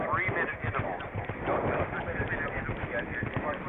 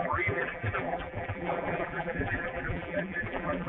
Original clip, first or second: first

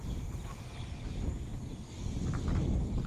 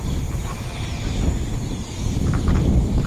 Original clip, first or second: first